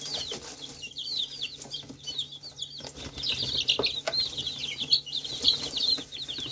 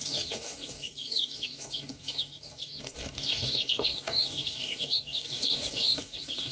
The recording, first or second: first